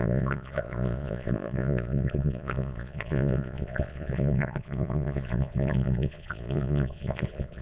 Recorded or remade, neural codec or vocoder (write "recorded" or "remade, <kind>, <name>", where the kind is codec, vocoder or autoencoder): remade, vocoder, Vocos